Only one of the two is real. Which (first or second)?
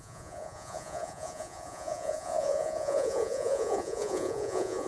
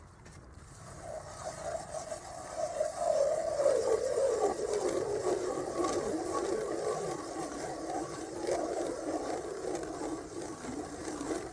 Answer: second